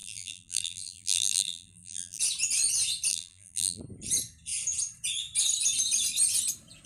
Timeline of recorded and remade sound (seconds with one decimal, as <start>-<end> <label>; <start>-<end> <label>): 0.0-2.2 remade; 2.2-3.1 recorded; 3.1-3.8 remade; 3.8-6.9 recorded

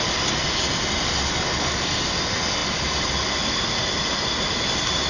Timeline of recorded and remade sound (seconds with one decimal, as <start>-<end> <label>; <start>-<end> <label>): 0.0-5.1 recorded